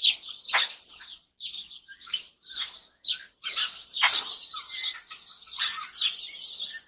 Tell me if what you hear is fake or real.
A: real